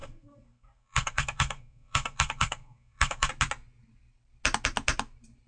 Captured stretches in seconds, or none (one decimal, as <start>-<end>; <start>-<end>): 3.3-5.5